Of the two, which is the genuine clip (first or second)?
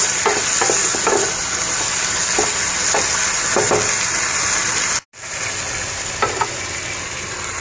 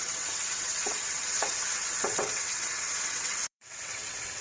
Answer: first